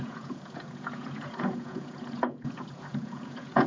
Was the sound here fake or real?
fake